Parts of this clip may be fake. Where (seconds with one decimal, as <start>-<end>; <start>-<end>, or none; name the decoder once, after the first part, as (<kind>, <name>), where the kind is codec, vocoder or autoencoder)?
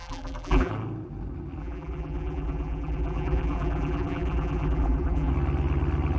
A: 0.0-0.7 (vocoder, BigVGAN v2); 1.6-5.3